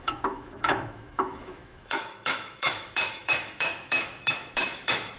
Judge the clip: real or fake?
fake